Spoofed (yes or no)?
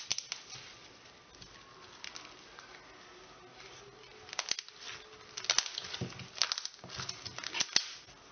no